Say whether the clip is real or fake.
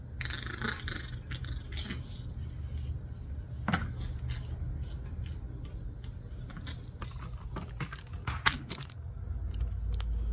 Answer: real